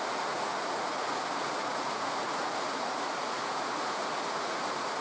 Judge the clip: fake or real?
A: fake